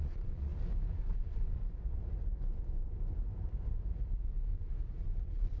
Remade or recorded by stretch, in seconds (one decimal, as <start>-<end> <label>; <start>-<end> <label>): 0.0-0.5 remade; 0.5-1.0 recorded; 1.0-1.6 remade; 1.6-5.0 recorded; 5.0-5.6 remade